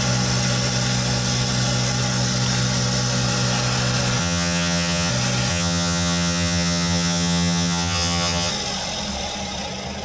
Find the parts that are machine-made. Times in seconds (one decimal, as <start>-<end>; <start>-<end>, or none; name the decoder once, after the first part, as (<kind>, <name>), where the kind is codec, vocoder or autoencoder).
4.2-5.1 (vocoder, HiFi-GAN); 5.5-8.5